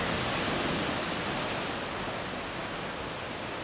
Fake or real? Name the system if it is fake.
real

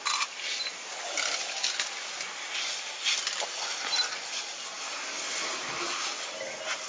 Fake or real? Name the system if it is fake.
real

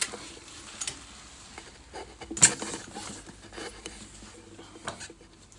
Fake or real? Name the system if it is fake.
real